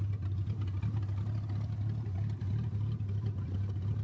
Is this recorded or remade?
recorded